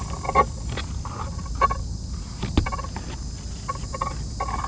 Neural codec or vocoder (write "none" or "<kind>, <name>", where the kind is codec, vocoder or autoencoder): none